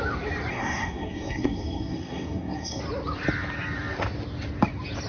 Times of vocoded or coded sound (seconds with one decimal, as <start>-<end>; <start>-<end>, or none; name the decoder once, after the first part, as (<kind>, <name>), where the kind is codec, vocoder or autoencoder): 0.5-2.8 (codec, SNAC)